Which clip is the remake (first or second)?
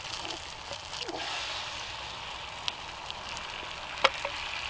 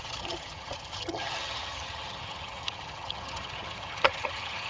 second